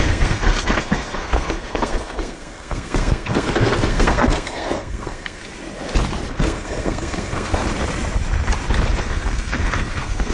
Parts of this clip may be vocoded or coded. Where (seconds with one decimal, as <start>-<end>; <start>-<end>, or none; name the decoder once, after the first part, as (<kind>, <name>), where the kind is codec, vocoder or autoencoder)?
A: 0.0-5.4 (codec, SNAC); 6.3-7.6; 9.0-10.3